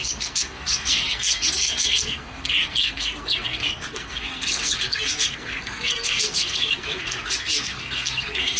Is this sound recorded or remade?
remade